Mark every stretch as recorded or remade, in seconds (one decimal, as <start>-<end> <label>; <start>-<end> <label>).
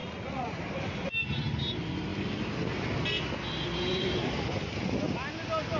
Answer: 0.0-0.6 remade; 0.6-5.8 recorded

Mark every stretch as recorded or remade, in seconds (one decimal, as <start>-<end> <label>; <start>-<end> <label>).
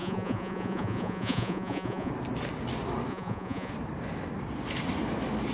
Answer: 0.0-2.1 remade; 2.1-3.1 recorded; 3.1-3.7 remade; 3.7-5.5 recorded